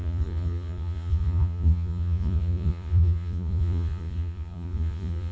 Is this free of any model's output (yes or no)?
no